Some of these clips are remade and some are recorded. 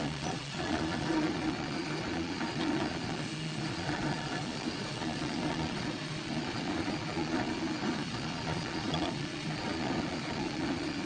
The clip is remade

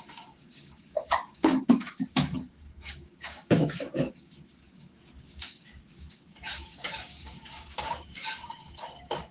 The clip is remade